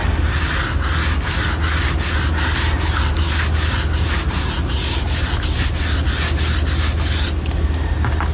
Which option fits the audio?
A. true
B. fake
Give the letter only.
A